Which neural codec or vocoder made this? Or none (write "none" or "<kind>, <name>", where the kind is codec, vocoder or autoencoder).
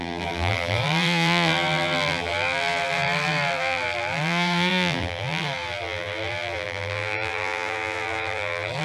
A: vocoder, BigVGAN v2